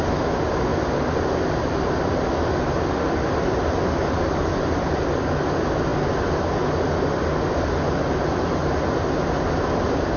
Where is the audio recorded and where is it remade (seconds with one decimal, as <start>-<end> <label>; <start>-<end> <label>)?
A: 0.0-10.2 recorded